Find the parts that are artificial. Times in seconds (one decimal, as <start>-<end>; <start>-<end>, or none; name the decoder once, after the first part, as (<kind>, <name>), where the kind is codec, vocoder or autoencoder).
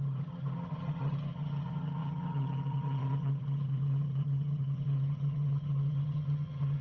0.0-6.8 (vocoder, HiFi-GAN)